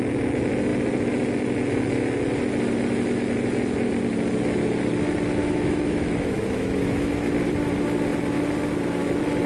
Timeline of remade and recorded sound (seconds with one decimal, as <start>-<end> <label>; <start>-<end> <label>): 0.0-5.4 recorded; 5.4-7.3 remade; 7.3-9.5 recorded

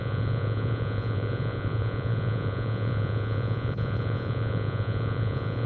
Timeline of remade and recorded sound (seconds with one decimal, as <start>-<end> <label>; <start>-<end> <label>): 0.0-5.7 remade

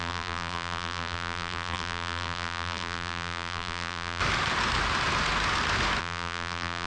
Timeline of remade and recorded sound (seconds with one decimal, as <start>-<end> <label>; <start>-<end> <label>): 0.0-4.2 remade; 4.2-6.0 recorded; 6.0-6.9 remade

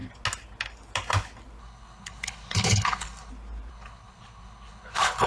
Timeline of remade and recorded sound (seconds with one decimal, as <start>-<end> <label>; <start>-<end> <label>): 0.0-1.6 recorded; 1.6-3.3 remade; 3.3-3.7 recorded; 3.7-5.3 remade

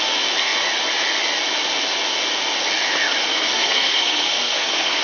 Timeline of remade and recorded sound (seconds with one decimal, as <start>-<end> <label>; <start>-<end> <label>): 0.0-3.3 recorded; 3.3-5.0 remade

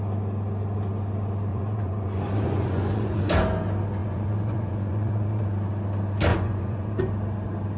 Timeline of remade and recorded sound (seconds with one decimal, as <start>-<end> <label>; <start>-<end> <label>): 0.0-1.5 recorded; 1.5-3.2 remade; 3.2-4.0 recorded; 4.0-5.4 remade; 5.4-6.3 recorded; 6.3-7.0 remade; 7.0-7.8 recorded

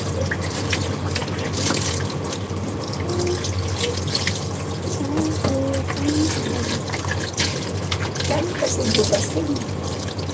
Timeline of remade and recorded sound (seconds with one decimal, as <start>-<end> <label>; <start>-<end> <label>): 0.0-10.3 recorded